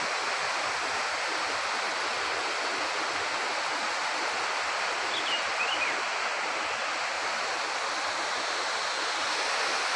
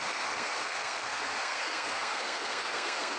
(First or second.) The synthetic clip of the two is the second